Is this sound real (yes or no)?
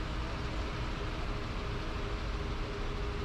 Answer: yes